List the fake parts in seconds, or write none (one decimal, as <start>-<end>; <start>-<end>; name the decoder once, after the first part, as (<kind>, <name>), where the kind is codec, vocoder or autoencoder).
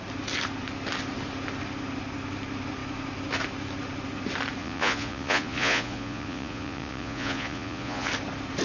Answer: 4.6-8.1 (vocoder, Vocos)